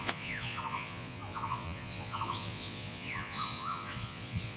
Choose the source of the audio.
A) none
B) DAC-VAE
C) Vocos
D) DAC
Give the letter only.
C